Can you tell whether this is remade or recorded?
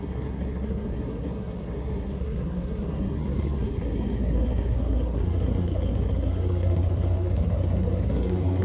remade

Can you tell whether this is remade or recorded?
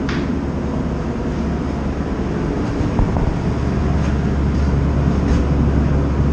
recorded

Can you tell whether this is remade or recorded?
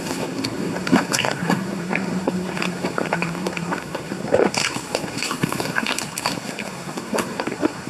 remade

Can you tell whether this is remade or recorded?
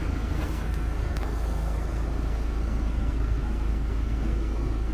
remade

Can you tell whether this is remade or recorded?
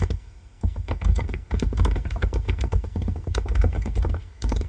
remade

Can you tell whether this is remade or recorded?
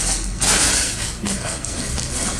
remade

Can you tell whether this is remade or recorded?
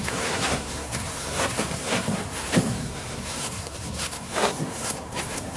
remade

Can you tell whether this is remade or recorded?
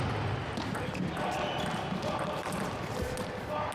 recorded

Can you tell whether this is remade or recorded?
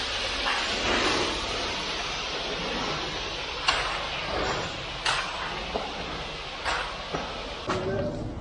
recorded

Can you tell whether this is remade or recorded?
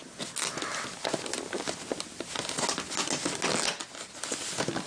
recorded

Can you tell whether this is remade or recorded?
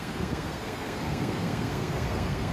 remade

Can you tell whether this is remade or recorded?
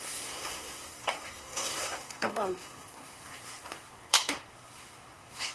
remade